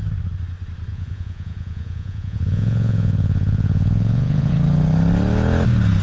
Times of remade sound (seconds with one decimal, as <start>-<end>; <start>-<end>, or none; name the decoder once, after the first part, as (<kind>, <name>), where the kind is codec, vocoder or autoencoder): 0.9-4.5 (vocoder, Vocos)